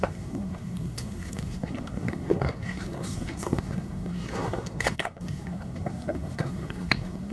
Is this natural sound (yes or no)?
no